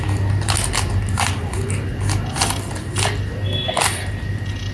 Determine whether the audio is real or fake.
real